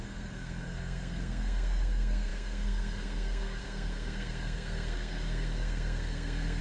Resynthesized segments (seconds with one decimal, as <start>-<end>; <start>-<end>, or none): 0.0-6.6